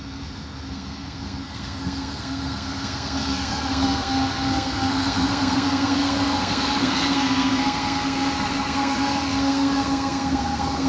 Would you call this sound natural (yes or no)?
no